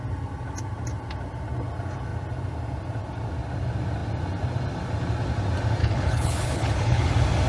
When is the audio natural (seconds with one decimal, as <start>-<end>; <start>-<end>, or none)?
0.0-5.8; 7.1-7.5